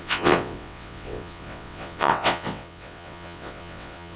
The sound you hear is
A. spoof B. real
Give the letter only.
A